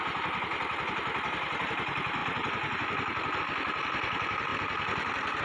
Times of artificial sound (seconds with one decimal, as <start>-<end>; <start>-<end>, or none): 2.2-3.4; 4.5-5.4